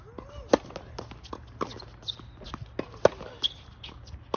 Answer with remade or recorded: recorded